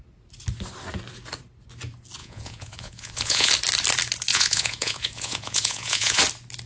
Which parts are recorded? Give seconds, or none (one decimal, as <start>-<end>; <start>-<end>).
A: 0.0-2.2; 3.5-4.3; 6.2-6.7